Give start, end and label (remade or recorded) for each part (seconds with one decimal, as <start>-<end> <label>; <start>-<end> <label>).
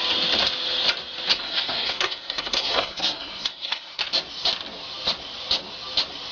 0.0-1.3 recorded; 1.3-4.0 remade; 4.0-6.3 recorded